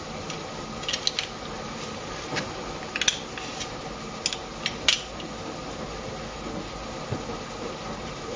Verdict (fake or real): real